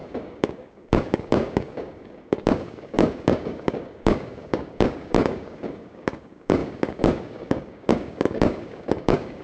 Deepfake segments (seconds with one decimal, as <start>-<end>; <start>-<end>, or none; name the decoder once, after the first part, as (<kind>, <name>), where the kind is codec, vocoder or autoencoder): 0.0-9.4 (codec, DAC)